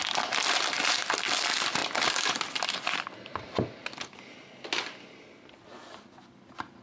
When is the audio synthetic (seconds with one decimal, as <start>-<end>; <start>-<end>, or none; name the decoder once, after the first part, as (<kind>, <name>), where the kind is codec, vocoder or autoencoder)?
none